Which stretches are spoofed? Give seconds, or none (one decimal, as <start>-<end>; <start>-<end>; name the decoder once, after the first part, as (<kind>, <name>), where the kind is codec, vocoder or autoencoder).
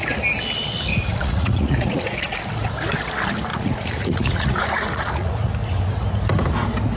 0.9-2.4 (vocoder, Vocos); 3.5-5.5